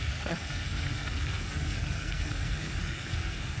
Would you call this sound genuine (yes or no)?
no